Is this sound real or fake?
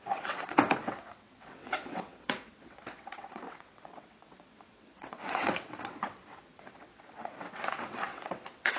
fake